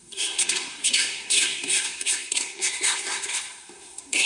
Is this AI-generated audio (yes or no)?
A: yes